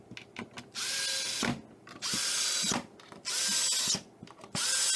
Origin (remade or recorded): recorded